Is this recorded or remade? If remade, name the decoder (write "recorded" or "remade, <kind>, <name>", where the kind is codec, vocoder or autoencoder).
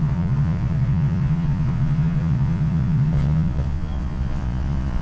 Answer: remade, vocoder, Vocos